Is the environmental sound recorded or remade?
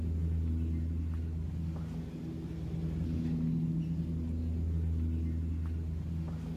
recorded